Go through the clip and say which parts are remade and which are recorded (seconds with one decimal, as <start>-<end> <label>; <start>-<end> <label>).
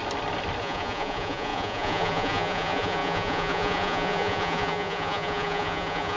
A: 0.0-0.6 recorded; 0.6-6.2 remade